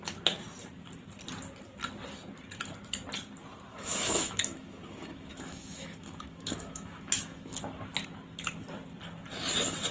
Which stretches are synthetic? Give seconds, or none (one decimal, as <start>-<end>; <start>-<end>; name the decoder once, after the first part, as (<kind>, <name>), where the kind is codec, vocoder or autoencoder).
3.7-7.6 (autoencoder, DAC-VAE)